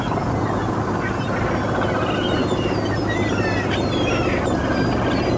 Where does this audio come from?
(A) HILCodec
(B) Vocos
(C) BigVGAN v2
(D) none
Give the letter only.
D